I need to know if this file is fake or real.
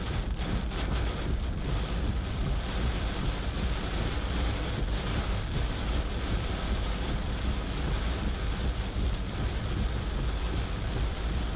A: real